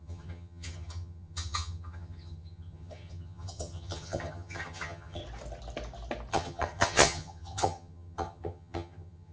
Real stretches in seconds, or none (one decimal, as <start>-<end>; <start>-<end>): 5.2-6.3